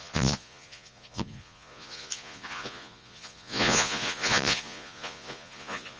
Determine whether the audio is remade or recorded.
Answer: remade